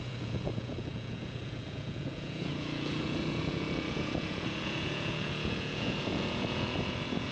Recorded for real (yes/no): no